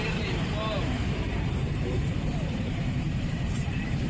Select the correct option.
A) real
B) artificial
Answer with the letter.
B